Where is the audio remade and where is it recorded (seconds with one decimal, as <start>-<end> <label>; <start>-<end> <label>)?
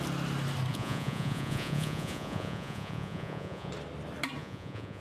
0.0-0.7 recorded; 0.7-3.7 remade; 3.7-4.4 recorded; 4.4-5.0 remade